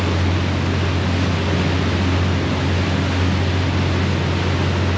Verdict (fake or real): real